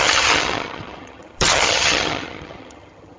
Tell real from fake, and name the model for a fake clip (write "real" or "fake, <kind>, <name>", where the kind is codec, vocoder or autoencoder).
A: fake, vocoder, HiFi-GAN